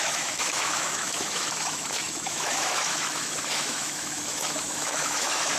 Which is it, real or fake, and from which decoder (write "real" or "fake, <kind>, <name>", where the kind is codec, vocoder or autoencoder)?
fake, autoencoder, DAC-VAE